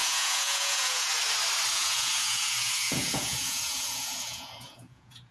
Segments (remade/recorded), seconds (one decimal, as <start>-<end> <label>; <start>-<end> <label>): 0.0-1.1 remade; 1.1-1.7 recorded; 1.7-5.3 remade